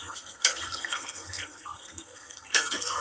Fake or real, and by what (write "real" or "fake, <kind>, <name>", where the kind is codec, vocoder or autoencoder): fake, codec, SNAC